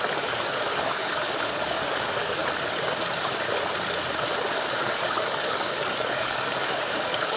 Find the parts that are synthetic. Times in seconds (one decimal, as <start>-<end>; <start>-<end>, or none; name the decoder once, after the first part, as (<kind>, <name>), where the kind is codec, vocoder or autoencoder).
0.0-2.4 (codec, DAC); 4.7-7.4